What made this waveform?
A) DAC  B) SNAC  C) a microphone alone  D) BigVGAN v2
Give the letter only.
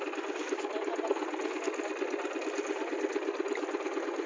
C